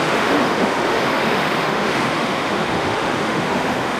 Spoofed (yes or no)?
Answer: yes